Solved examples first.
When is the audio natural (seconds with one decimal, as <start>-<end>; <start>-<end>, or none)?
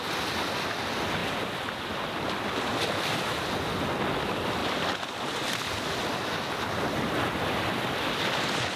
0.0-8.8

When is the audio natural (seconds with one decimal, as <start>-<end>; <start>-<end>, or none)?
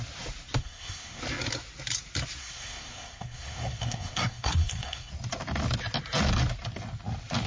0.0-0.6; 1.2-2.4; 5.1-7.5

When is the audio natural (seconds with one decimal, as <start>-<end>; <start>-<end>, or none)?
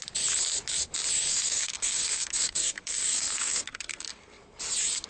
0.0-1.3; 4.4-5.1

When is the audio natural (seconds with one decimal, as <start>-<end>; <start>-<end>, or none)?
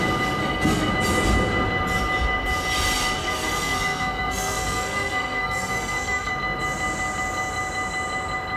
0.0-0.4; 0.9-3.2; 6.3-8.6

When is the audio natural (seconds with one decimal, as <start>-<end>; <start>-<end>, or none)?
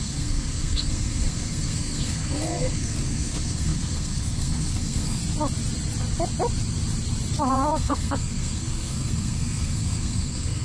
5.2-7.5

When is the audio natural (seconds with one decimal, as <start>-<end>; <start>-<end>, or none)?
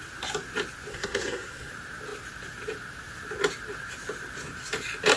0.0-0.9; 1.7-5.2